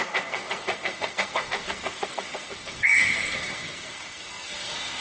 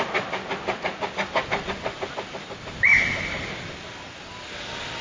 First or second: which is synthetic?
first